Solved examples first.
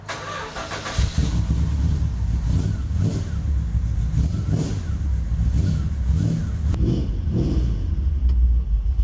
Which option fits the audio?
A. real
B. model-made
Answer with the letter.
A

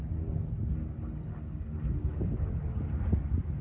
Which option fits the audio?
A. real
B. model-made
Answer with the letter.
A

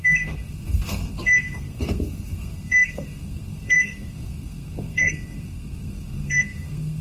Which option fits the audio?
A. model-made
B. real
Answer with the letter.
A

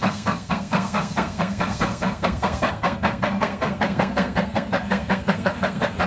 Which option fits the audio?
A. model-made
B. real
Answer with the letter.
A